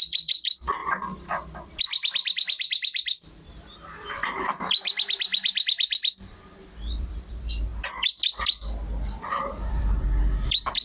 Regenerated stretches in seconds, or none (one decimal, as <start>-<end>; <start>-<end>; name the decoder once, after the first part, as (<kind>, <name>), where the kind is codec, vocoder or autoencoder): 0.0-0.8 (vocoder, BigVGAN v2); 1.8-5.3; 6.9-7.7; 9.5-10.8